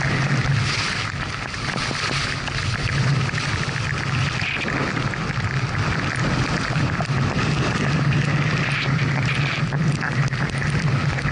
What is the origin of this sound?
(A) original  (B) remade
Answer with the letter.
A